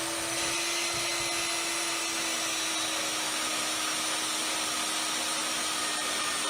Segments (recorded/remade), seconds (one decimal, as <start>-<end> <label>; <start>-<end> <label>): 0.0-6.5 recorded